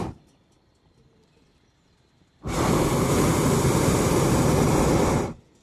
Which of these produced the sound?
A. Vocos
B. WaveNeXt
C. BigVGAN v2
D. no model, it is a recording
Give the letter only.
D